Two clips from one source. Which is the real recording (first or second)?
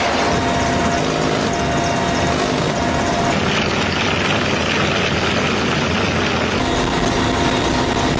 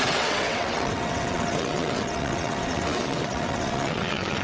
first